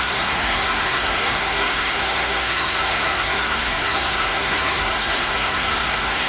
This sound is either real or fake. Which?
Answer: fake